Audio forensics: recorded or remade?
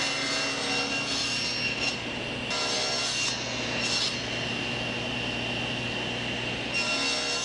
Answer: recorded